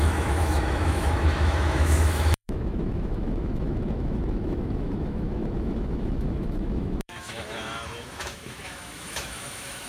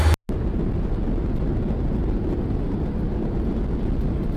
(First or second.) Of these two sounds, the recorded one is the second